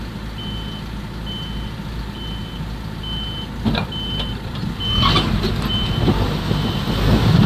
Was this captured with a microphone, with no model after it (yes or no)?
yes